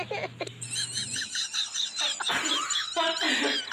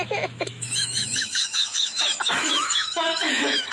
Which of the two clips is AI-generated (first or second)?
second